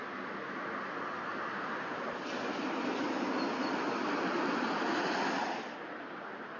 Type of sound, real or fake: real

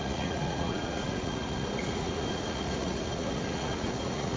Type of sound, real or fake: fake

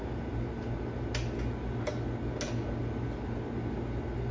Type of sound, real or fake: real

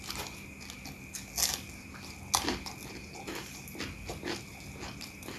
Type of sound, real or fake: real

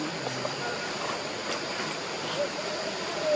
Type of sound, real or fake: real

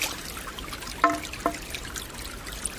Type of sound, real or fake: real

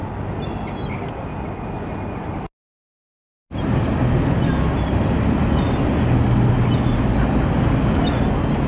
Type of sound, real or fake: real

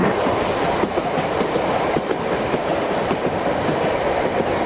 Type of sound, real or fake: real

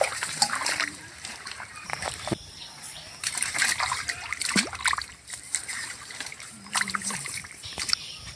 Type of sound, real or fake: fake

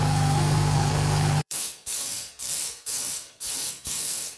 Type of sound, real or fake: fake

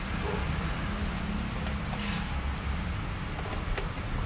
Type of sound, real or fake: real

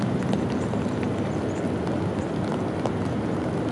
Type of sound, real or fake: real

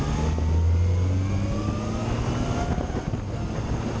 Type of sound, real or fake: real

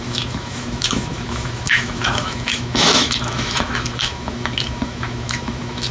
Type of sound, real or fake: fake